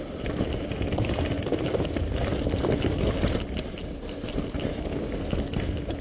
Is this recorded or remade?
recorded